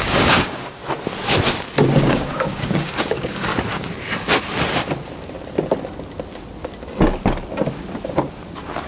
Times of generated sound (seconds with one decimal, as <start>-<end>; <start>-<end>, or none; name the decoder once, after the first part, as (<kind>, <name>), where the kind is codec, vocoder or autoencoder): 0.0-0.8 (codec, DAC); 2.0-3.5